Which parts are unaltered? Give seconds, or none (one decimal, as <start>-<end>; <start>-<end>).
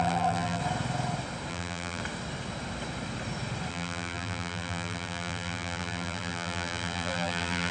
0.6-1.5; 2.0-3.7